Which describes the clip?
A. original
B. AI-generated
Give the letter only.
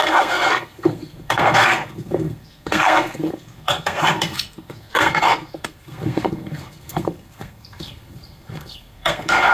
B